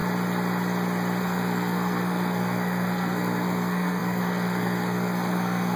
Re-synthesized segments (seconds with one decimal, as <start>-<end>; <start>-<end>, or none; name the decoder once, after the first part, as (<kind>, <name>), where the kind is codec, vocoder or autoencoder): 1.2-5.8 (codec, SNAC)